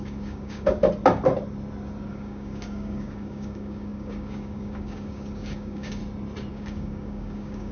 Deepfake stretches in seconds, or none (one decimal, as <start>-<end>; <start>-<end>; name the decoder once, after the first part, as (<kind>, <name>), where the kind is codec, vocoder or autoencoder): 0.0-0.8 (codec, DAC); 2.1-6.0; 6.5-7.7